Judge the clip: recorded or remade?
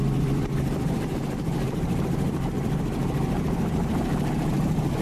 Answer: remade